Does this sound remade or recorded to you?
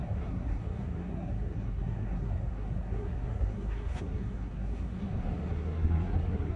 remade